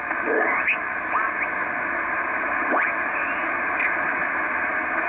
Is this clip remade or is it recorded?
recorded